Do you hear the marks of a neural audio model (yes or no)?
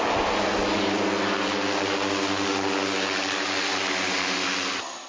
no